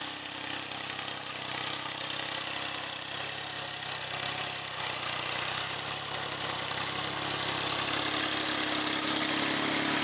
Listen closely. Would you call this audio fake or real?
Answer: real